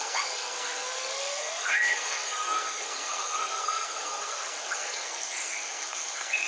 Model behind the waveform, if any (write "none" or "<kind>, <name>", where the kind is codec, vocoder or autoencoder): codec, SNAC